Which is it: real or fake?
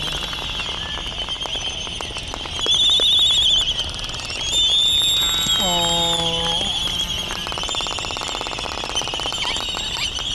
real